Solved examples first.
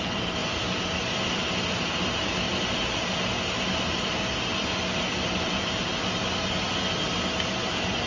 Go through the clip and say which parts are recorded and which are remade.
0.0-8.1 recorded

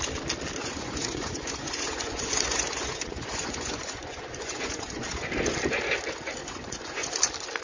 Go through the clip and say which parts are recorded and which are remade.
0.0-0.6 recorded; 0.6-5.2 remade; 5.2-6.4 recorded; 6.4-7.1 remade; 7.1-7.6 recorded

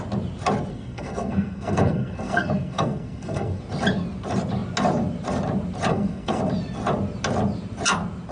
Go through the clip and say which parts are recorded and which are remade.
0.0-0.7 recorded; 0.7-3.6 remade; 3.6-5.9 recorded; 5.9-6.4 remade; 6.4-8.3 recorded

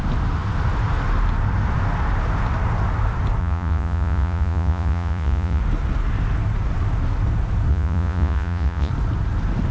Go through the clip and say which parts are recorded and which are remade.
0.0-3.4 recorded; 3.4-5.6 remade; 5.6-7.7 recorded; 7.7-8.9 remade; 8.9-9.7 recorded

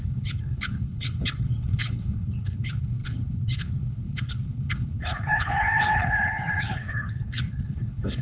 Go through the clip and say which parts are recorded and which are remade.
0.0-8.2 remade

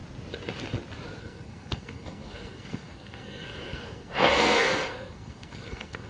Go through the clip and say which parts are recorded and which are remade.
0.0-1.2 recorded; 1.2-6.1 remade

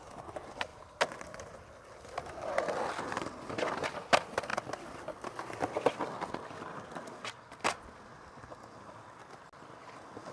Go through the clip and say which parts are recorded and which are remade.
0.0-10.3 recorded

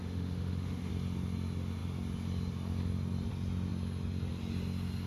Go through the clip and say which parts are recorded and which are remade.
0.0-0.9 remade; 0.9-5.1 recorded